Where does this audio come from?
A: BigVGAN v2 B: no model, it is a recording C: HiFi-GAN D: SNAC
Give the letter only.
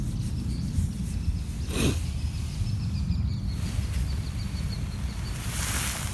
B